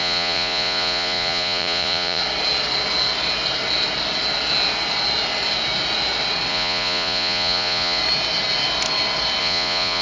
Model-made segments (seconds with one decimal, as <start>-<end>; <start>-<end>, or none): 0.0-2.2; 6.5-8.0; 9.4-10.0